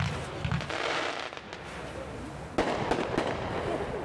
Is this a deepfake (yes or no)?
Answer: no